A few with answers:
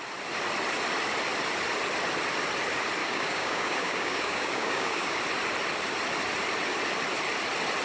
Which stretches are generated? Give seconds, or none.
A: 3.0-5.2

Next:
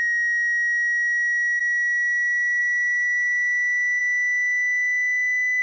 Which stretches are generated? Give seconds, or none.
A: none

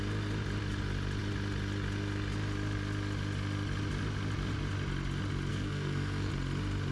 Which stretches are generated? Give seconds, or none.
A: 5.5-6.3

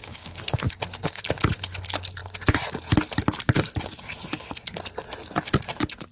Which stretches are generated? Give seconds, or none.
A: 0.0-1.2

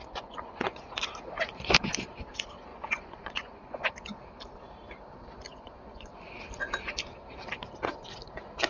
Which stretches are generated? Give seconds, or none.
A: 0.0-0.9; 2.7-3.9; 5.5-6.3